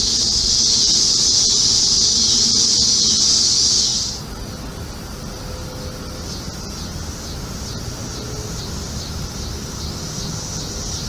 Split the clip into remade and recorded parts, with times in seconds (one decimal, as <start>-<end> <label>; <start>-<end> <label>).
0.0-11.1 recorded